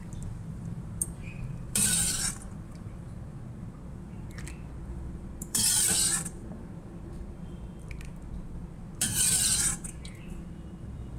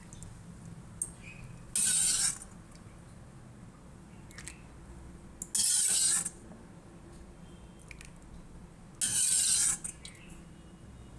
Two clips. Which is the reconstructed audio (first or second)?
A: first